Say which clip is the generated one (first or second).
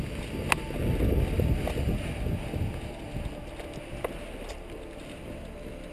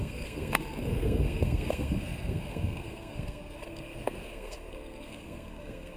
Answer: second